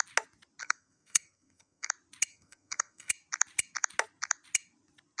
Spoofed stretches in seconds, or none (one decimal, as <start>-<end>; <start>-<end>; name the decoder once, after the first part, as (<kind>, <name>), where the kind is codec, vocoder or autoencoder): 0.6-1.9 (codec, SNAC); 2.3-3.1